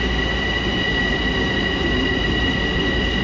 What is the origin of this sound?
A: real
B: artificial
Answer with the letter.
A